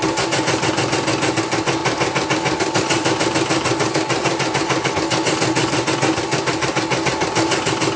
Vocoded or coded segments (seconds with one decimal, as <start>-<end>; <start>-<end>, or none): 1.8-4.9; 5.6-6.7